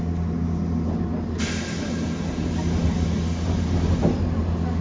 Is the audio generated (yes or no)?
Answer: no